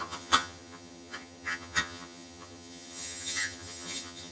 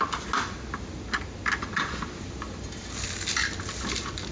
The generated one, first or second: first